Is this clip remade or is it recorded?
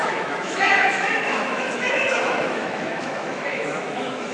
remade